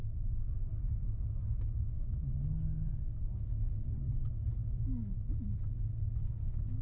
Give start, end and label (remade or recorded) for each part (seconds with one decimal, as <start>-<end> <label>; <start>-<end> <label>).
0.0-6.8 recorded